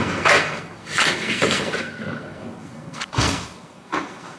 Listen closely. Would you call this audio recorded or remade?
remade